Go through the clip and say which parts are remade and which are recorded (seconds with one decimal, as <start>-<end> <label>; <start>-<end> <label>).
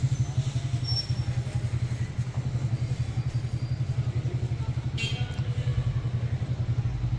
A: 0.0-7.2 recorded